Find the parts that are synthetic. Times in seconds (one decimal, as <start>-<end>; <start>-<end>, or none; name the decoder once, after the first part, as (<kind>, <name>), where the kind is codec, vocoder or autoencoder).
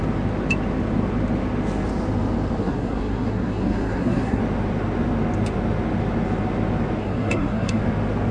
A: 2.6-4.4 (codec, SNAC); 7.0-7.8